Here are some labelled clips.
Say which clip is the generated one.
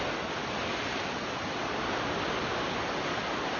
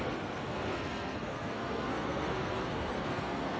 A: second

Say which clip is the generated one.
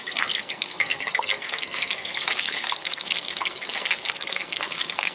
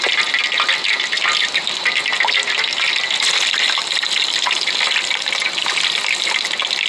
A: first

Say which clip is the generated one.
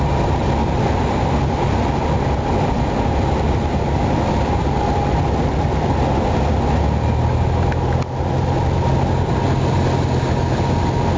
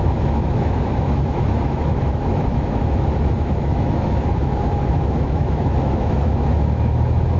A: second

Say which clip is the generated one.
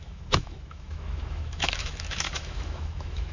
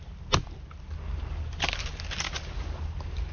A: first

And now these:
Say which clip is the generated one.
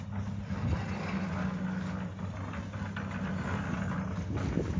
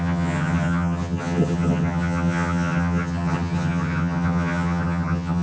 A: second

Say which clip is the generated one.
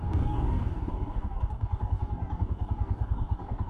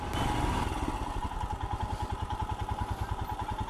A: first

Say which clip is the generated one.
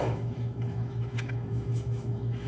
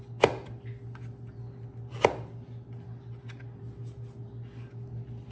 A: first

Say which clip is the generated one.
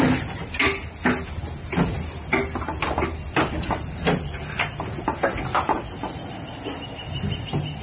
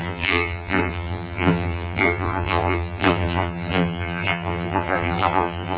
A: second